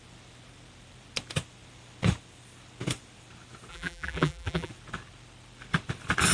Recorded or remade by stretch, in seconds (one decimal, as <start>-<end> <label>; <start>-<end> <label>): 0.0-3.7 recorded; 3.7-4.7 remade; 4.7-6.3 recorded

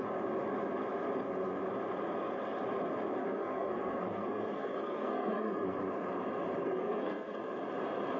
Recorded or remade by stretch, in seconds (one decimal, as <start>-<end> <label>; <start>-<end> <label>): 0.0-3.2 recorded; 3.2-5.8 remade; 5.8-6.6 recorded; 6.6-7.4 remade; 7.4-8.2 recorded

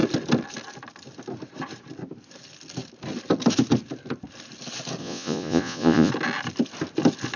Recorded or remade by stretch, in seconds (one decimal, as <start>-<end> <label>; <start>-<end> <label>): 0.0-5.0 recorded; 5.0-6.1 remade; 6.1-7.4 recorded

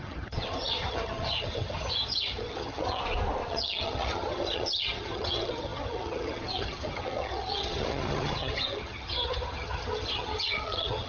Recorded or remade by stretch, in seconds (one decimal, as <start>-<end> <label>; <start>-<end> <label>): 0.0-3.0 remade; 3.0-3.5 recorded; 3.5-11.1 remade

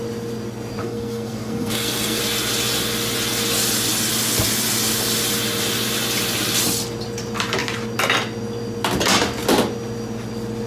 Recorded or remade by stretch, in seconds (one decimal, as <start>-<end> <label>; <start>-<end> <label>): 0.0-0.8 recorded; 0.8-2.2 remade; 2.2-10.7 recorded

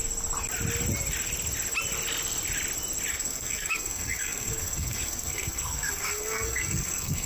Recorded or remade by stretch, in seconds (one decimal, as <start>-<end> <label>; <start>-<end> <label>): 0.0-3.1 recorded; 3.1-7.3 remade

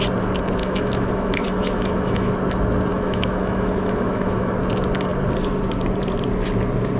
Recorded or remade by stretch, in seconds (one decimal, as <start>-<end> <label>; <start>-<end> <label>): 0.0-0.6 recorded; 0.6-2.3 remade; 2.3-2.9 recorded; 2.9-4.5 remade; 4.5-7.0 recorded

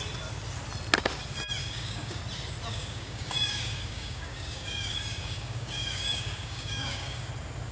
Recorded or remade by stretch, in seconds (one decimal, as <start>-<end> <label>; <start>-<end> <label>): 0.0-1.6 recorded; 1.6-2.2 remade; 2.2-2.7 recorded; 2.7-7.3 remade; 7.3-7.7 recorded